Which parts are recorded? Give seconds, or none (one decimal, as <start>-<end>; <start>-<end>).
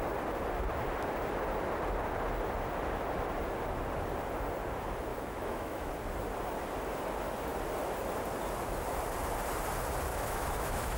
0.0-5.1; 5.9-10.1